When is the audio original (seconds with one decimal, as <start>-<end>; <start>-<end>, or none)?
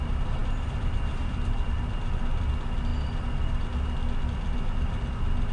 0.0-0.4; 2.5-5.5